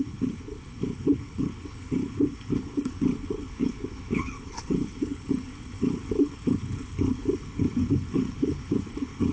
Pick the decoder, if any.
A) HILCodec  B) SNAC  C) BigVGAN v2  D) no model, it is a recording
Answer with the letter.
A